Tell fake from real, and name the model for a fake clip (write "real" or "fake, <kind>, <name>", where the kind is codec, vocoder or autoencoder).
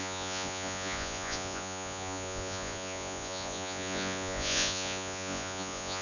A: fake, vocoder, Vocos